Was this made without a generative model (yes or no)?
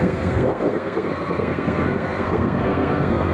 no